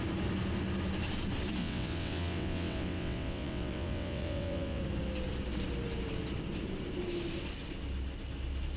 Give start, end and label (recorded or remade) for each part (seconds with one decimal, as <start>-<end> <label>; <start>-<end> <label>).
0.0-1.6 recorded; 1.6-4.8 remade; 4.8-8.8 recorded

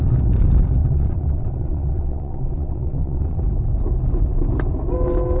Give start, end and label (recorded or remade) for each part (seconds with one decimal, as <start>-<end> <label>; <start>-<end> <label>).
0.0-0.8 recorded; 0.8-3.4 remade; 3.4-5.4 recorded

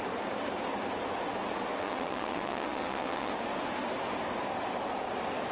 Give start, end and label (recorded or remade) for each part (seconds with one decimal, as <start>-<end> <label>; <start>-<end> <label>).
0.0-1.8 recorded; 1.8-3.3 remade; 3.3-5.5 recorded

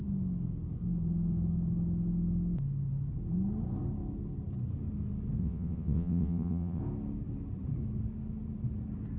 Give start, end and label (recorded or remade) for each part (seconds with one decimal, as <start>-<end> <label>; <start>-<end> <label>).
0.0-5.4 recorded; 5.4-6.8 remade; 6.8-9.2 recorded